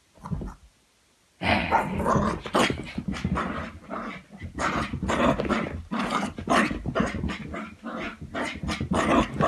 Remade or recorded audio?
recorded